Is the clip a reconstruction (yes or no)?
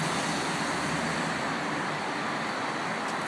no